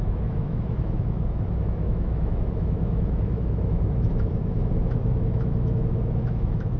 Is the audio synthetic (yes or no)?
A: yes